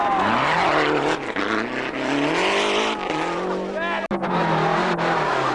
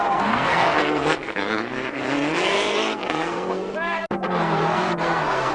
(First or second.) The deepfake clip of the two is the second